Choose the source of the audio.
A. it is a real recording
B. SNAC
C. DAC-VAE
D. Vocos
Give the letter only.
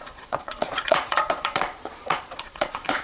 D